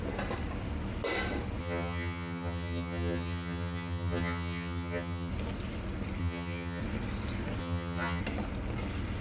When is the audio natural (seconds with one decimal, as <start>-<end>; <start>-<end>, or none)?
0.0-1.6; 5.3-6.2; 6.8-7.6; 8.2-9.2